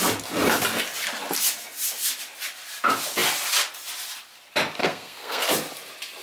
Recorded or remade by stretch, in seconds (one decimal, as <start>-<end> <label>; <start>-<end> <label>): 0.0-4.8 recorded; 4.8-5.5 remade; 5.5-6.2 recorded

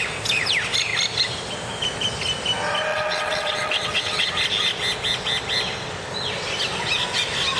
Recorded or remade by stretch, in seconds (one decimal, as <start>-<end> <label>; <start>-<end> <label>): 0.0-2.9 recorded; 2.9-4.3 remade; 4.3-7.6 recorded